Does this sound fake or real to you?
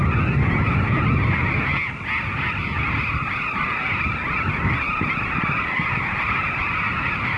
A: real